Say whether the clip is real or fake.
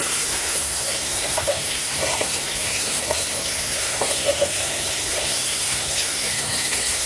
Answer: fake